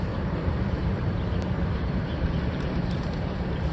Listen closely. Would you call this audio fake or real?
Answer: fake